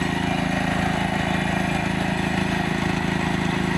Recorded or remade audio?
recorded